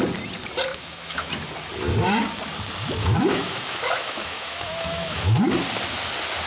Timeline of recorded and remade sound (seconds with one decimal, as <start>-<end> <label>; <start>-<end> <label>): 0.0-0.7 recorded; 0.7-1.3 remade; 1.3-3.0 recorded; 3.0-5.4 remade; 5.4-6.5 recorded